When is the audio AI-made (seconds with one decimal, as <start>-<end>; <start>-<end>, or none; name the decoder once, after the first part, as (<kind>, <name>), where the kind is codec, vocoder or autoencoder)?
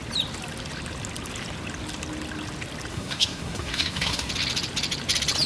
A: 2.9-4.3 (codec, SNAC)